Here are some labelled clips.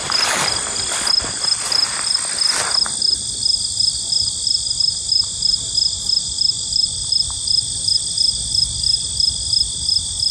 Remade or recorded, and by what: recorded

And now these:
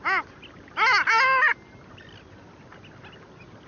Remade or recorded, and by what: recorded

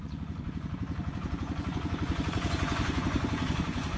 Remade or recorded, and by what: remade, vocoder, Vocos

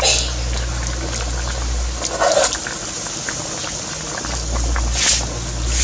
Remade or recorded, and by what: recorded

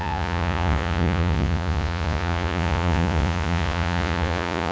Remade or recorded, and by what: remade, vocoder, Vocos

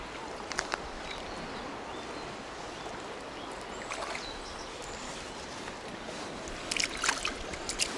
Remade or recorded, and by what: recorded